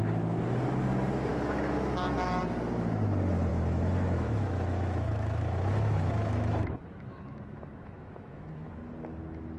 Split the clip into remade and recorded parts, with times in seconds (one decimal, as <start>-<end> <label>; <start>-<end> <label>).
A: 0.0-1.3 recorded; 1.3-2.4 remade; 2.4-3.5 recorded; 3.5-8.7 remade; 8.7-9.6 recorded